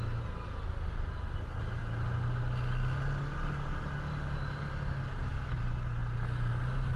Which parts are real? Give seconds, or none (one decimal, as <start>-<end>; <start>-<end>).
0.0-7.0